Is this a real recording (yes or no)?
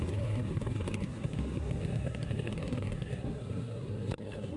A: no